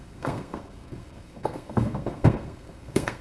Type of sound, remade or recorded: remade